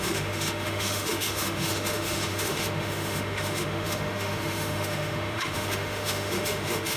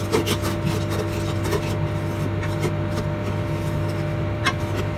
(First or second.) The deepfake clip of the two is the first